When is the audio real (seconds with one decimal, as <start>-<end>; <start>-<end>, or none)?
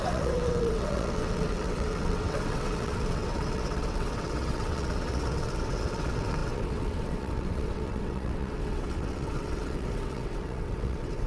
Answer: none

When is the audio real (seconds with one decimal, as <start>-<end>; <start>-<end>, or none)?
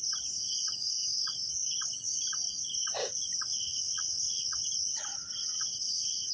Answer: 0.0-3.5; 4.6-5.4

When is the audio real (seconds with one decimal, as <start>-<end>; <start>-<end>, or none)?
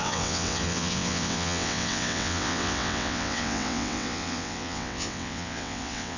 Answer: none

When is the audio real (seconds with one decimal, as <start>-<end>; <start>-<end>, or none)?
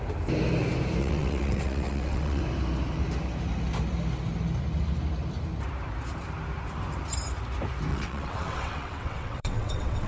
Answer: 0.0-1.0; 2.4-7.9